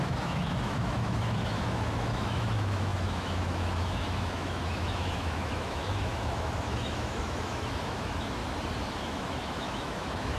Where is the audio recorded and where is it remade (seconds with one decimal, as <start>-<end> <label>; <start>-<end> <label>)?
0.0-8.4 remade; 8.4-9.0 recorded; 9.0-10.4 remade